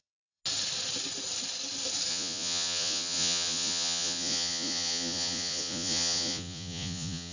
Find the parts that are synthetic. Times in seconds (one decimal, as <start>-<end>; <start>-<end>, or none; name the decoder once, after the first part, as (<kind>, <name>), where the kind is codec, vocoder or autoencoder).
0.0-0.4 (vocoder, Vocos); 2.1-7.3